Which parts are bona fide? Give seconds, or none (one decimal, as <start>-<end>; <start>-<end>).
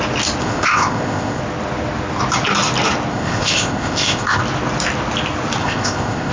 0.0-0.4; 1.4-3.1; 4.4-5.6